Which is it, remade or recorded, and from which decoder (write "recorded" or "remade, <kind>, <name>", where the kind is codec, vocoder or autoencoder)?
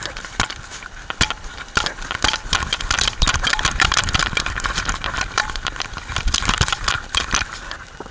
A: remade, vocoder, BigVGAN v2